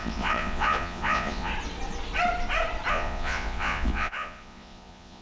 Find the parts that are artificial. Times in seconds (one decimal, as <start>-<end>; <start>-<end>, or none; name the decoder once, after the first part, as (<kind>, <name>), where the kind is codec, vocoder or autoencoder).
0.0-1.5 (vocoder, Vocos); 2.9-5.2